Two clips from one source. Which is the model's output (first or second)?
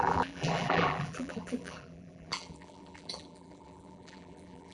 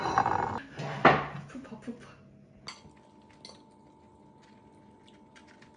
first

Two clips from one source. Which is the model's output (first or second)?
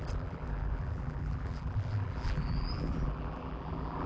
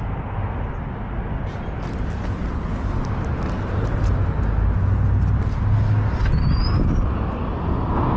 first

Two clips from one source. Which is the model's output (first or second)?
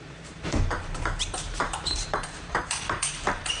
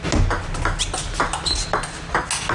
first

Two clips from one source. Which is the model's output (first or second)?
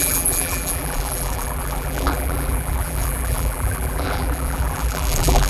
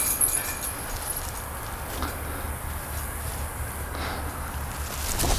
first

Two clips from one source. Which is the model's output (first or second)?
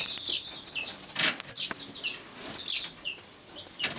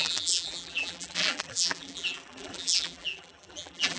second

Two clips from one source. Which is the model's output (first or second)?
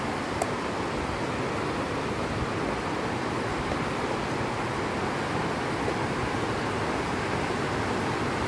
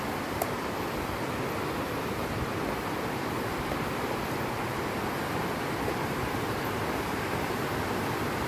second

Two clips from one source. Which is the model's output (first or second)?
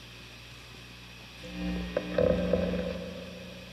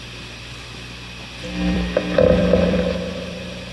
second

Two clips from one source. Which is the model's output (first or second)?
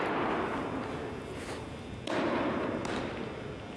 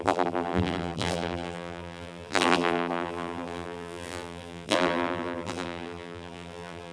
second